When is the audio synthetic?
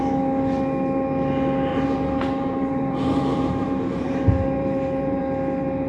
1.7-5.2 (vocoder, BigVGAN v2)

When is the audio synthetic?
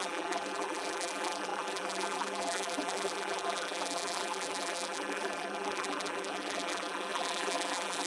0.0-8.1 (vocoder, BigVGAN v2)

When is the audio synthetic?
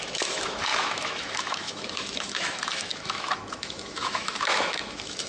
0.0-5.3 (autoencoder, DAC-VAE)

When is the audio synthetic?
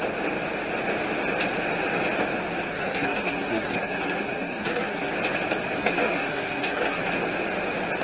2.7-5.1 (codec, SNAC); 5.8-7.0